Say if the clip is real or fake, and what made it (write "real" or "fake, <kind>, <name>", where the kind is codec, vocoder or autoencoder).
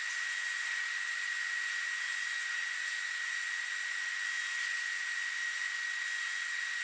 real